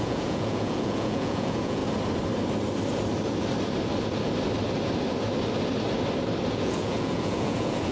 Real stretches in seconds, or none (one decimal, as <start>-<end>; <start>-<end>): 1.8-6.5